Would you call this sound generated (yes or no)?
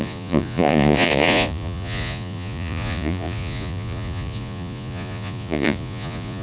yes